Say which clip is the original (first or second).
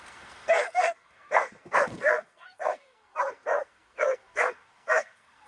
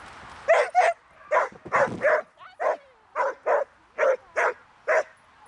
second